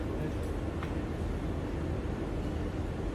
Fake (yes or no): no